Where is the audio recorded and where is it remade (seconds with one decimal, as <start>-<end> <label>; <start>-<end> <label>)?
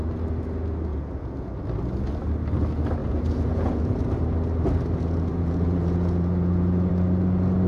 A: 0.0-0.9 recorded; 0.9-1.5 remade; 1.5-3.0 recorded; 3.0-4.0 remade; 4.0-5.3 recorded; 5.3-6.9 remade; 6.9-7.7 recorded